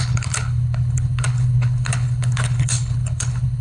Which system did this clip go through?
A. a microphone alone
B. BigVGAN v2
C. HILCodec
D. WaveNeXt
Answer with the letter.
C